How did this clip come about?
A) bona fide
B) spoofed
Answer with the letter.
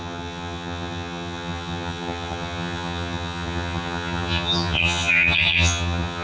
B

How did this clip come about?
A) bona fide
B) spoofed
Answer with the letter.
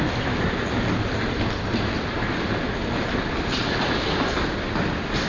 A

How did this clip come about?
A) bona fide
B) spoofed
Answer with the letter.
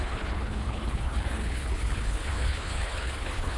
B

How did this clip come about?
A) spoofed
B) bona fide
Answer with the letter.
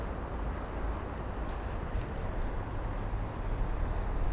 B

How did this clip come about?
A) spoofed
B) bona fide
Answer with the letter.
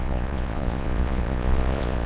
A